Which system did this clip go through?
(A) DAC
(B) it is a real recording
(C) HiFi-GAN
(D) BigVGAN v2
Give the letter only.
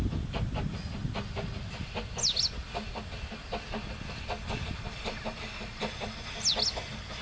B